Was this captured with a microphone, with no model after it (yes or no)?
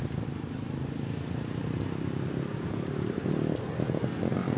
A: yes